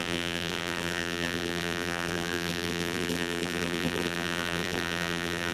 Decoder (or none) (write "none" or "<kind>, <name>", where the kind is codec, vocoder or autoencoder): vocoder, BigVGAN v2